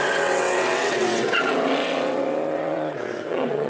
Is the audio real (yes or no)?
no